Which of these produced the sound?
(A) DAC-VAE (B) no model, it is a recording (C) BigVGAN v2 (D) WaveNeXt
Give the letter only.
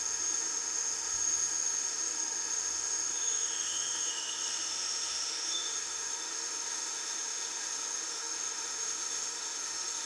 A